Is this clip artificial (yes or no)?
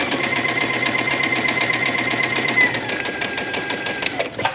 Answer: yes